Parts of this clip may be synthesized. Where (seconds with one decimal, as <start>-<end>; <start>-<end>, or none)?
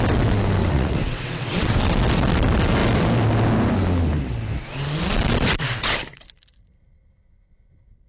0.6-1.8